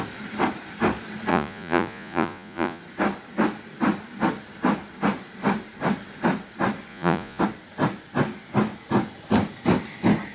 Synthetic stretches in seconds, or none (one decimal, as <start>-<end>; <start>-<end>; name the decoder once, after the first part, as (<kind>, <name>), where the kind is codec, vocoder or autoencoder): 1.3-2.8 (vocoder, Vocos); 6.9-7.4